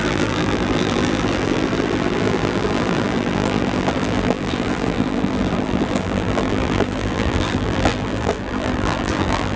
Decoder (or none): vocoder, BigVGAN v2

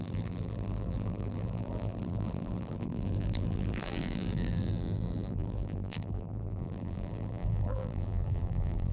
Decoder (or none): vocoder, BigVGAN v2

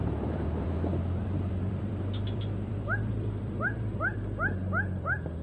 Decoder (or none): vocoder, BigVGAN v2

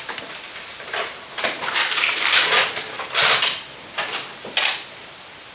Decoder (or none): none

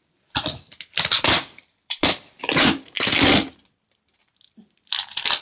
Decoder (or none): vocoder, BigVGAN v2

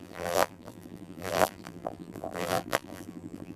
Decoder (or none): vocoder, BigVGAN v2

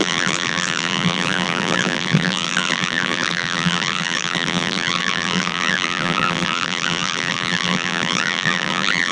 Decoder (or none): vocoder, BigVGAN v2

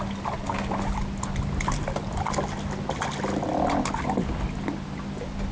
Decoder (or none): none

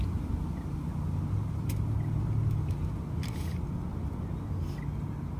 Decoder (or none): none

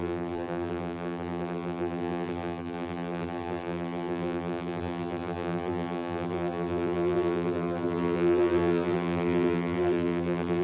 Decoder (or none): vocoder, BigVGAN v2